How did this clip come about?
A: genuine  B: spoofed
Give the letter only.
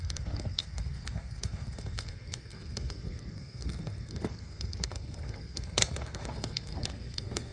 B